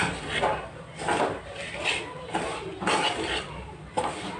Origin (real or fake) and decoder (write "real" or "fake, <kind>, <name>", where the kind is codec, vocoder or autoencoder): real